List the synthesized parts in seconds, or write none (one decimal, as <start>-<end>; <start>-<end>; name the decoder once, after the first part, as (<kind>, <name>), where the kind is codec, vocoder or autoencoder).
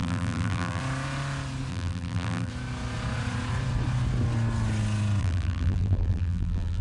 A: 0.0-0.8 (vocoder, BigVGAN v2); 1.7-2.5; 5.2-6.8